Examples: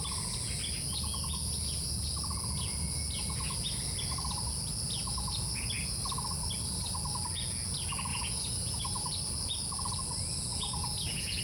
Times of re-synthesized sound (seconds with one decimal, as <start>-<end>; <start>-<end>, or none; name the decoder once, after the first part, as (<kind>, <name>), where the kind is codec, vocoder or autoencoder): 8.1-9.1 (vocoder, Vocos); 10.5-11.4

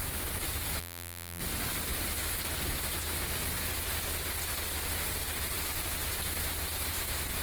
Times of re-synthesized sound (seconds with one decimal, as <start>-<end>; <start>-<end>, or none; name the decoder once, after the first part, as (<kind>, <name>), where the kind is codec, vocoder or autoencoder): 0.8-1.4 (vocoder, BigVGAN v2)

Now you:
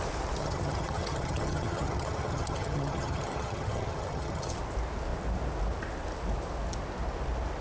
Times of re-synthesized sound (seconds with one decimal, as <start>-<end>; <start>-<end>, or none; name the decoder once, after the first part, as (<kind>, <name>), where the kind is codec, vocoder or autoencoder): 0.4-4.6 (vocoder, HiFi-GAN)

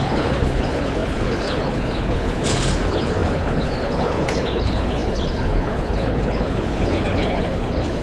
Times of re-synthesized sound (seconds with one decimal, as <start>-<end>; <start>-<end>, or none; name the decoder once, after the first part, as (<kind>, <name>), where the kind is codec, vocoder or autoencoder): 0.0-8.0 (codec, HILCodec)

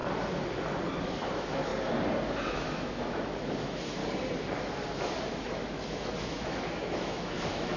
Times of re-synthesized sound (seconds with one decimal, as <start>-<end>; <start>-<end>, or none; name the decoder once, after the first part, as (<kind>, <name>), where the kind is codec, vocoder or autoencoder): 1.0-1.7 (autoencoder, DAC-VAE); 2.5-4.0; 5.3-7.8